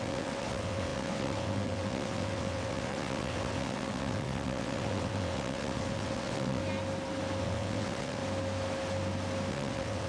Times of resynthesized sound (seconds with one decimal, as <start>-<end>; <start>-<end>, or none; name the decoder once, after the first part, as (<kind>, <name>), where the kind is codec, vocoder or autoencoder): 0.0-6.6 (vocoder, WaveNeXt); 7.4-8.2; 9.5-10.1